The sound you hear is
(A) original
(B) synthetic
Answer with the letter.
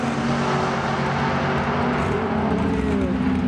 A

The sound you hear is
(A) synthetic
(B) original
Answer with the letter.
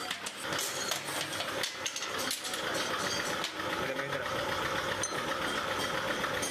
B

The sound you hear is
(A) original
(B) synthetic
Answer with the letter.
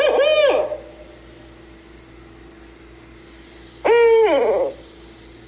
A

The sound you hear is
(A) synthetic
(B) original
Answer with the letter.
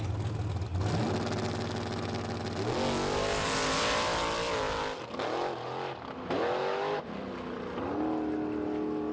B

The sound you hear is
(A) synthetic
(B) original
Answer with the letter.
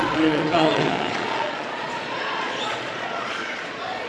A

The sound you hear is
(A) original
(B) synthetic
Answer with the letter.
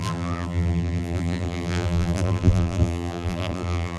B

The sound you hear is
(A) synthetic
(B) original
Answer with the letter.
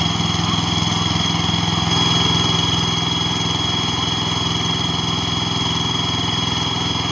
B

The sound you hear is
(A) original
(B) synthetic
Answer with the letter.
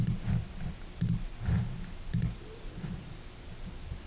A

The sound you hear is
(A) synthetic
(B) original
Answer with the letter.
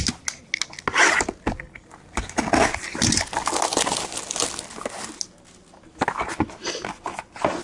B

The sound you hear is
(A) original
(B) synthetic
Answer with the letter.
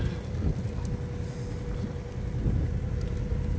A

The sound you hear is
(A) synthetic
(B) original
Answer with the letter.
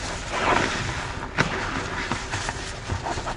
B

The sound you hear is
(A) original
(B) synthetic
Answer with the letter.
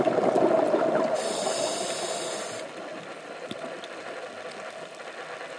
A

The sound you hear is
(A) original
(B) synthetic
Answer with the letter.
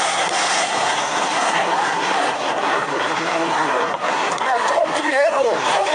B